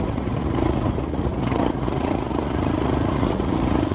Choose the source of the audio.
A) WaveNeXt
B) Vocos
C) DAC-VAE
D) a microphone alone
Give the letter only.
B